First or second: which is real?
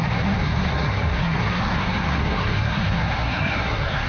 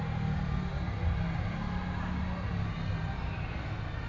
second